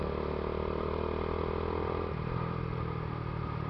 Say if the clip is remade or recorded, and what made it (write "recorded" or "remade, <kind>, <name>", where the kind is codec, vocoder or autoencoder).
recorded